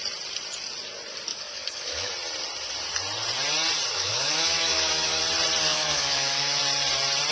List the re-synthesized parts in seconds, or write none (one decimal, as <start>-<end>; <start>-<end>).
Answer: 1.3-2.1; 3.9-5.2; 5.7-6.6